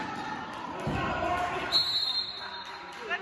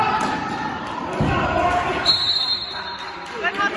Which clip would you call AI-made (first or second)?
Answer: second